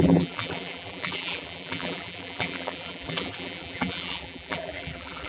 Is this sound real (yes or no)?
no